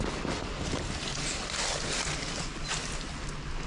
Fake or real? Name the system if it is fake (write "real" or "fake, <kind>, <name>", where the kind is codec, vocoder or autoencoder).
real